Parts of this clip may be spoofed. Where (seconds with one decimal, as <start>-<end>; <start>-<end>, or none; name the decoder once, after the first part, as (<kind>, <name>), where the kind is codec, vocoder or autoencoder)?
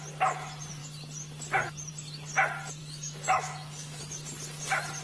2.8-4.0 (autoencoder, DAC-VAE)